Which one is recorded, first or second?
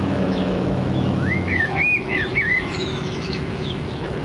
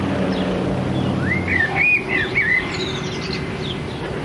second